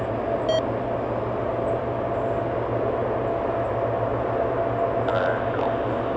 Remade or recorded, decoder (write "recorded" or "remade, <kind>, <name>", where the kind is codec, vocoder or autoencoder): recorded